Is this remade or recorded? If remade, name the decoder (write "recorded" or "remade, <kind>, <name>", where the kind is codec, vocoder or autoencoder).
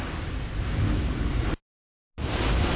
recorded